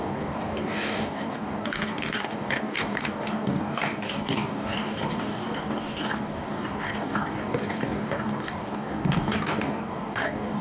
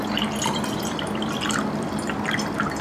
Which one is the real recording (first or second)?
second